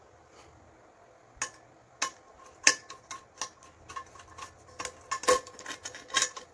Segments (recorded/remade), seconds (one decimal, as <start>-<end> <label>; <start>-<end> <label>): 0.0-6.5 recorded